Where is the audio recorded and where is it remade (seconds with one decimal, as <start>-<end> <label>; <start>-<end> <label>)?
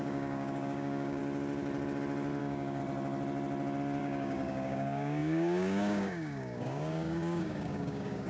0.0-1.2 remade; 1.2-2.4 recorded; 2.4-2.8 remade; 2.8-4.0 recorded; 4.0-8.3 remade